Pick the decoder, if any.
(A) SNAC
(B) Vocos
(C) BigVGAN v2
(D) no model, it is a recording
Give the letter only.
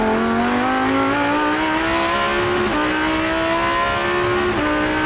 D